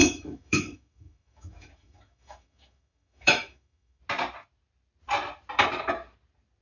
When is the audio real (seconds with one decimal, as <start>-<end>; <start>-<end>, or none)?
4.0-6.6